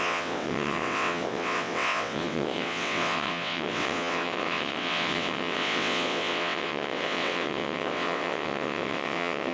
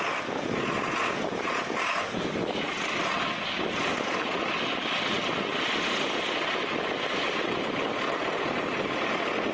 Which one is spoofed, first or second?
first